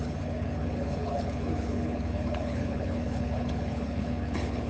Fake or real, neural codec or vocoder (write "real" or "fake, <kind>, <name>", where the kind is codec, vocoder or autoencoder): fake, codec, HILCodec